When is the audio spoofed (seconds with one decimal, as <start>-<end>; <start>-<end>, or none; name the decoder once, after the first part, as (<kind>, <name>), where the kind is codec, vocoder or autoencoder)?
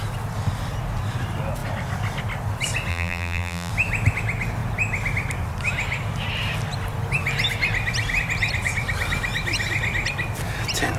2.9-3.7 (vocoder, BigVGAN v2)